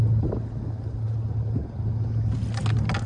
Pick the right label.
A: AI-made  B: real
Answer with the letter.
B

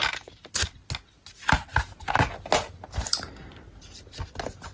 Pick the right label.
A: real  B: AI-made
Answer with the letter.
A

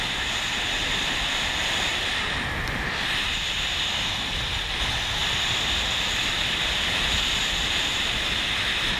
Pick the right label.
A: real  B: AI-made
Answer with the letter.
A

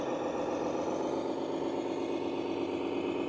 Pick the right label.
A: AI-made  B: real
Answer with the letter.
B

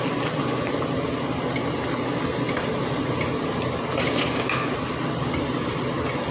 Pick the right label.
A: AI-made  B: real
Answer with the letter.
B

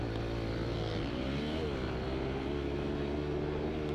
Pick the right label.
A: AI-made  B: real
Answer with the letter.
B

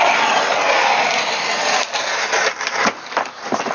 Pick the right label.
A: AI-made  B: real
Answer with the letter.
B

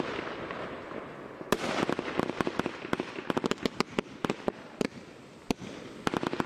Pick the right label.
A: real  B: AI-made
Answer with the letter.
A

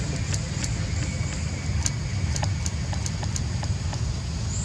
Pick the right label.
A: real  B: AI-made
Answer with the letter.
A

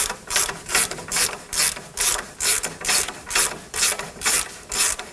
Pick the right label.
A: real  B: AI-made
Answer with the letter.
B